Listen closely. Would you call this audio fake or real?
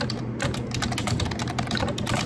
real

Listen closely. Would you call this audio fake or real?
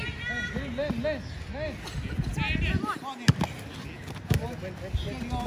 real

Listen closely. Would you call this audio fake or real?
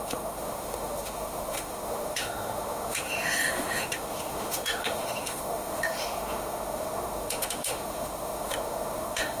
fake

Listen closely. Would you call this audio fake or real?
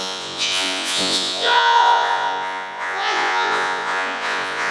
fake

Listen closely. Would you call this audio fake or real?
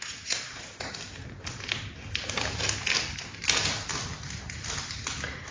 real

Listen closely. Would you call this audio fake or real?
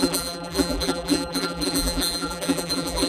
fake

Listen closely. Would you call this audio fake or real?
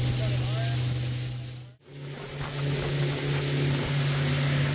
real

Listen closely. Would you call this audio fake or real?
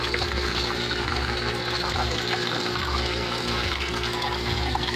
fake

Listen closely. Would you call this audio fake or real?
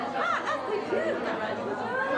real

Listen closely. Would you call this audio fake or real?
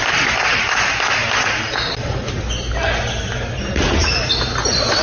real